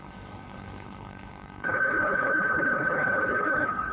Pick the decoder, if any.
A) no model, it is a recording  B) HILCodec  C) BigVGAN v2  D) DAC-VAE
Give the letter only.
B